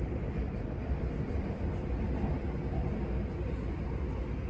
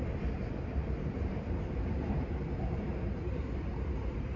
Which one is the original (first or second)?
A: first